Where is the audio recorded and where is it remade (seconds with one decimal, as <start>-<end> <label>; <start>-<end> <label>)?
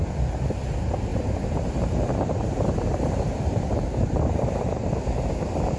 0.0-1.1 recorded; 1.1-4.6 remade; 4.6-5.8 recorded